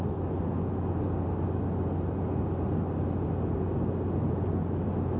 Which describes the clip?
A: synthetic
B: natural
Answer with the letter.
B